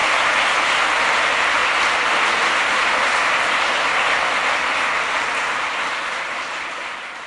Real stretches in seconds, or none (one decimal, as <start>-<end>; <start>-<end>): 0.7-7.3